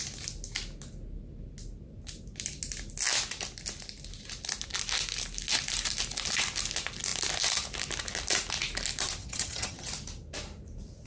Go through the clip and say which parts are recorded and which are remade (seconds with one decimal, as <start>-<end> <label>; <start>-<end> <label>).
0.0-9.2 recorded; 9.2-9.9 remade; 9.9-11.1 recorded